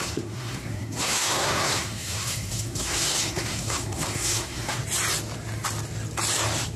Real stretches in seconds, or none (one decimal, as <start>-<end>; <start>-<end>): 4.8-6.8